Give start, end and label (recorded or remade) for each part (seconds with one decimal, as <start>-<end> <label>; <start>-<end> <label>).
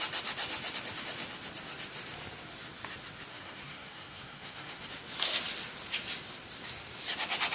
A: 0.0-3.3 recorded; 3.3-4.9 remade; 4.9-7.5 recorded